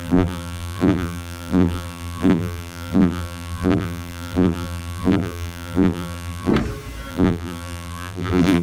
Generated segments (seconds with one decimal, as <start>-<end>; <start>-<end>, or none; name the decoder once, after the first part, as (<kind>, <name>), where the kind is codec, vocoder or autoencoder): 0.0-6.5 (vocoder, BigVGAN v2); 7.1-8.6

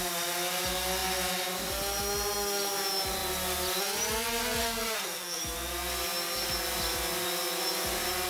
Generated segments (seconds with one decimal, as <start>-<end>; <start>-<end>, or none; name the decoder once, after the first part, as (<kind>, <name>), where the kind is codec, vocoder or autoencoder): 4.6-5.4 (codec, SNAC)